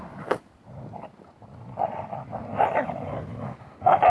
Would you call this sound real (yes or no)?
yes